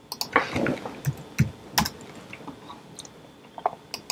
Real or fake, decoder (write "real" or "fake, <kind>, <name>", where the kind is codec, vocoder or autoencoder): real